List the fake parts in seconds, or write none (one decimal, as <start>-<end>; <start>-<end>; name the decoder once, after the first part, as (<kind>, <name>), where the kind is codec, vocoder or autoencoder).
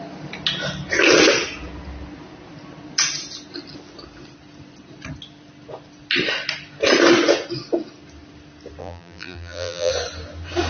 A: 8.8-9.9 (vocoder, BigVGAN v2)